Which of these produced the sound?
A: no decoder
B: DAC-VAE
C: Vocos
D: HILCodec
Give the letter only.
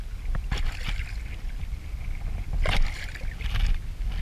A